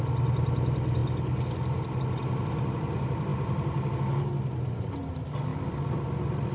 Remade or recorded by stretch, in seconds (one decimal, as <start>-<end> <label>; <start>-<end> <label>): 0.0-6.5 recorded